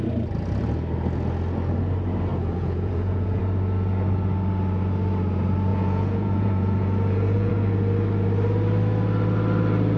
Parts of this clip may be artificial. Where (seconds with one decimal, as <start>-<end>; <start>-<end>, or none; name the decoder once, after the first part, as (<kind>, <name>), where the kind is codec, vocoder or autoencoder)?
2.3-3.4 (vocoder, Vocos); 5.7-7.5